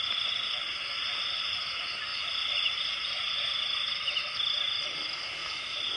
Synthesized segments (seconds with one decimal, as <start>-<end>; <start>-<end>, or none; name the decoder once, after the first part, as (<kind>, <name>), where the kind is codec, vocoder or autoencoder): none